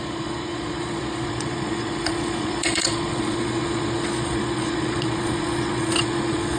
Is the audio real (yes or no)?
no